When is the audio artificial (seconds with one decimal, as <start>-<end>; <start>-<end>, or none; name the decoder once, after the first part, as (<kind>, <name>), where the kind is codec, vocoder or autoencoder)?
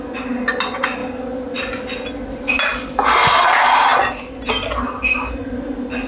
none